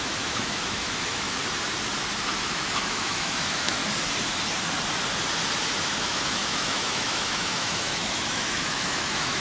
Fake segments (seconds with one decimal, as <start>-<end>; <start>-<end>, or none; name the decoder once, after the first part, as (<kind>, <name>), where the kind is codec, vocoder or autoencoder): 0.0-1.4 (autoencoder, DAC-VAE); 2.3-3.8; 5.8-9.4